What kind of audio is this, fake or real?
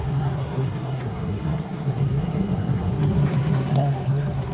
fake